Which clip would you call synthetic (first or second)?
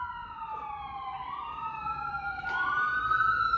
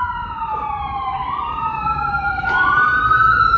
second